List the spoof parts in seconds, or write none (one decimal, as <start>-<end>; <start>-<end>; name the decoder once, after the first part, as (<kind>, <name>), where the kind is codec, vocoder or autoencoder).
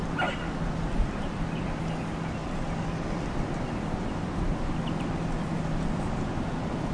none